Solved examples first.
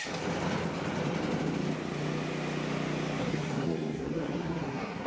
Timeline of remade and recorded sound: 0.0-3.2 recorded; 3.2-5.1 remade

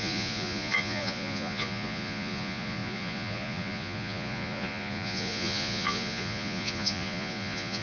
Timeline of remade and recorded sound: 0.0-7.8 remade